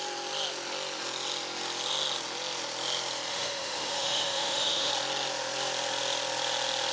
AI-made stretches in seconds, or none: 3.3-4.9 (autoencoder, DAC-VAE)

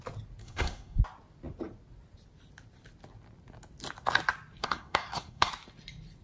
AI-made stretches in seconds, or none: 0.4-1.0 (codec, SNAC); 4.6-5.5

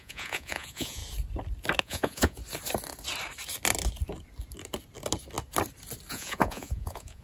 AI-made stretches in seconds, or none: 0.0-1.0 (vocoder, Vocos); 1.8-2.4; 6.1-7.2

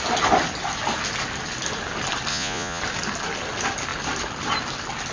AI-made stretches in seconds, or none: 2.3-2.8 (vocoder, Vocos)

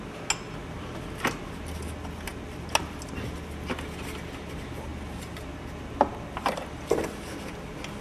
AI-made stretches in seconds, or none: none

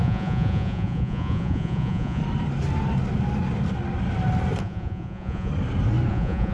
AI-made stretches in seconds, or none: 0.0-2.2 (vocoder, Vocos); 4.6-5.5; 6.1-6.5

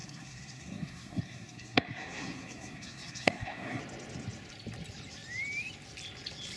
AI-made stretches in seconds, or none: 0.0-3.8 (codec, SNAC)